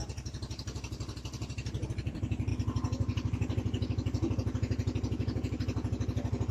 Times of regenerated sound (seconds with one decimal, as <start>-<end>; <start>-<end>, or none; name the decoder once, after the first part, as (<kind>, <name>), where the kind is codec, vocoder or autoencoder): 0.0-2.5 (vocoder, BigVGAN v2)